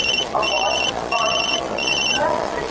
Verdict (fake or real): fake